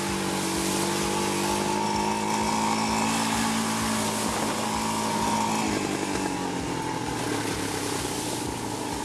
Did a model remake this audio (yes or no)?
no